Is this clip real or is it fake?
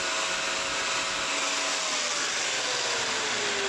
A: real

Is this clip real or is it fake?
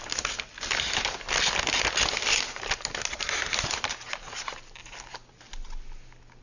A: real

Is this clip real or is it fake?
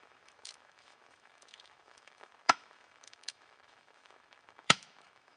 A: fake